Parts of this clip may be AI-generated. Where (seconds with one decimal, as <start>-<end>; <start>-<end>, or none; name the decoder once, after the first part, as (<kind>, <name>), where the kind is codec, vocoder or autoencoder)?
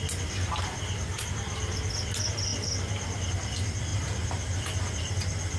none